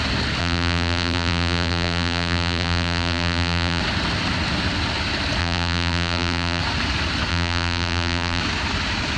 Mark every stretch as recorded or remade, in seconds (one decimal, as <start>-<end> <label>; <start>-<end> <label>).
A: 0.0-0.4 recorded; 0.4-3.8 remade; 3.8-5.4 recorded; 5.4-6.6 remade; 6.6-7.3 recorded; 7.3-8.4 remade; 8.4-9.2 recorded